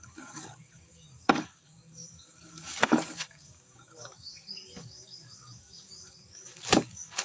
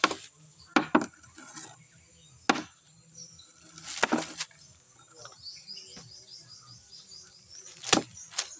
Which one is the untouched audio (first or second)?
second